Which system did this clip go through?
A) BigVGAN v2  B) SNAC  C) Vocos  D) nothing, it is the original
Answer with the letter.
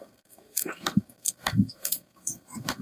B